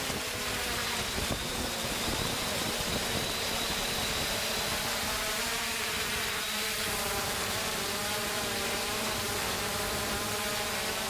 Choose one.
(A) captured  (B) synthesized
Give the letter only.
B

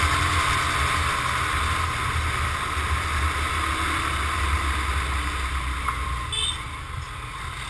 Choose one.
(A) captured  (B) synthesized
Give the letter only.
A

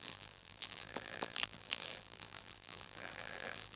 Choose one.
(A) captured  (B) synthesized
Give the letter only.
B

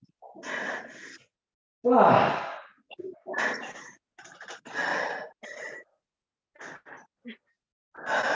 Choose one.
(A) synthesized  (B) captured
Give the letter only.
B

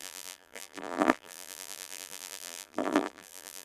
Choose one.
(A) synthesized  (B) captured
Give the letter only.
A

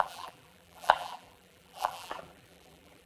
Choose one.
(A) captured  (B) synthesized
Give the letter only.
B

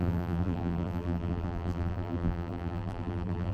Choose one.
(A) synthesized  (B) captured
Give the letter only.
A